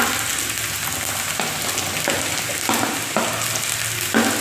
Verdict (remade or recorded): recorded